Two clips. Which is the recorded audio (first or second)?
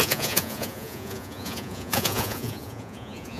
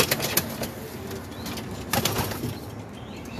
second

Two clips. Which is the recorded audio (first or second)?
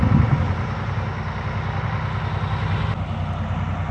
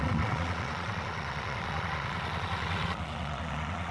first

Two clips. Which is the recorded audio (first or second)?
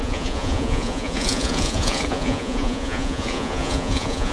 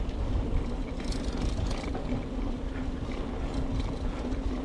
second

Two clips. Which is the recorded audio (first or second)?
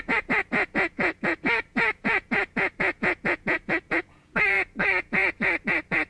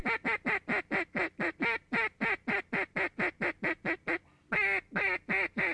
second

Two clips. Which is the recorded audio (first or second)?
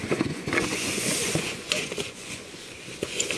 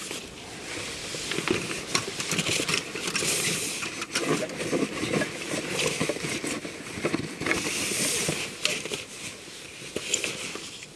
second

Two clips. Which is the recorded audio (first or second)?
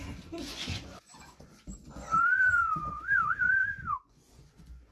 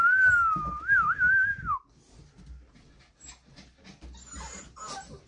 second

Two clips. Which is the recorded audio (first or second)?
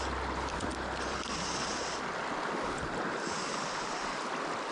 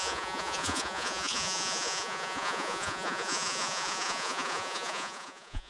first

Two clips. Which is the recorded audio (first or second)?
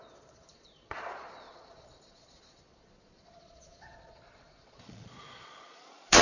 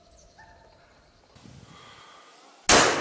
second